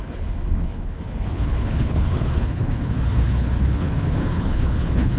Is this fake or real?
fake